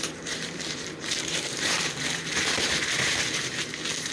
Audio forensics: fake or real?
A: fake